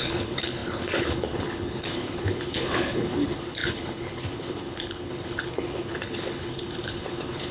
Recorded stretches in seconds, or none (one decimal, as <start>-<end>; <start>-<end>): none